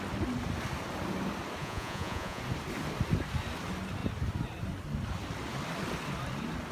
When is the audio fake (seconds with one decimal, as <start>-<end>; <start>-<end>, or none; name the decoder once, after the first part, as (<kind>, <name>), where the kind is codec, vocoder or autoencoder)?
1.6-2.4 (vocoder, Vocos)